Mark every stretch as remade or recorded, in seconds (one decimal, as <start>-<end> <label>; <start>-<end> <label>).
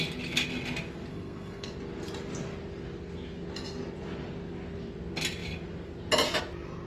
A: 0.0-1.1 recorded; 1.1-1.7 remade; 1.7-6.9 recorded